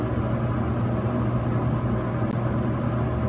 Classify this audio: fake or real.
real